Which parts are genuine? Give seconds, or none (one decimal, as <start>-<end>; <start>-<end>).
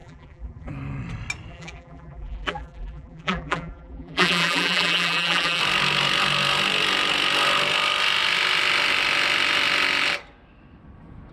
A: 0.7-1.5; 5.6-11.3